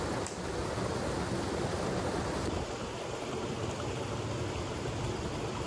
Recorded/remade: recorded